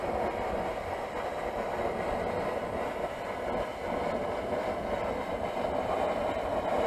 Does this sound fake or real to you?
real